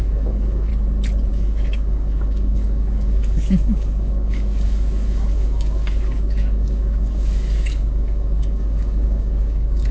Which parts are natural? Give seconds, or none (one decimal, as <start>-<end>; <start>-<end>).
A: 0.7-1.3